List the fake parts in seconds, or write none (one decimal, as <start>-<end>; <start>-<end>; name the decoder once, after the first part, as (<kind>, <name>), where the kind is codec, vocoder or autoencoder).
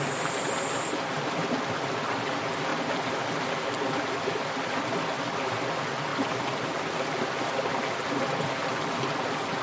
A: none